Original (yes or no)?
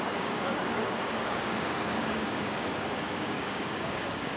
no